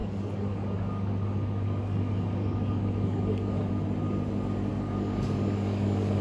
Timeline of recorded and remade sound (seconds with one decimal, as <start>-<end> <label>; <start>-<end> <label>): 0.0-3.7 remade; 3.7-4.7 recorded; 4.7-6.2 remade